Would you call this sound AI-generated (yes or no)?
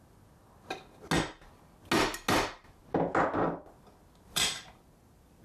no